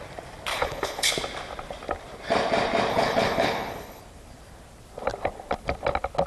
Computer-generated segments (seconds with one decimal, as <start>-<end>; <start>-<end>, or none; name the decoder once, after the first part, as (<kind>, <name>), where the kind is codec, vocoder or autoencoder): 0.5-1.1 (codec, HILCodec); 2.9-4.0